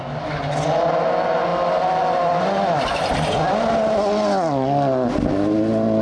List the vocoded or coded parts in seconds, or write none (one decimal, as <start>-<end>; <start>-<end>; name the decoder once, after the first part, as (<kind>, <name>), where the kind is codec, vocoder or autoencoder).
none